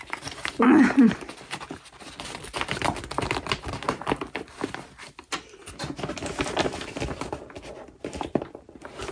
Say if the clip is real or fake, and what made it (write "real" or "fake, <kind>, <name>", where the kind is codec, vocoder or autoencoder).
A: fake, vocoder, BigVGAN v2